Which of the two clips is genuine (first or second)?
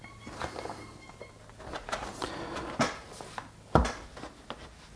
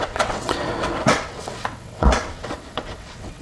first